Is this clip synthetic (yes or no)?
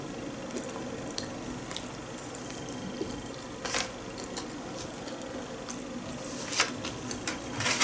no